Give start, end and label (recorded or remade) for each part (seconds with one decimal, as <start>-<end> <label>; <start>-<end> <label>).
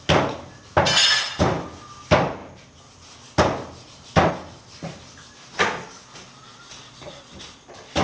0.0-8.0 recorded